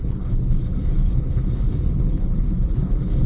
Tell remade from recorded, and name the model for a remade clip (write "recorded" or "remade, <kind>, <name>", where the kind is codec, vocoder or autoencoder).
remade, codec, HILCodec